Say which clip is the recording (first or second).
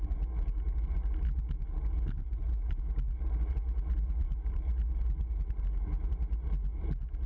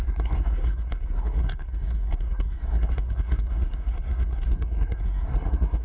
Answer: first